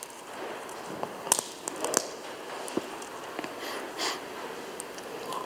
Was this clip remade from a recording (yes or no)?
no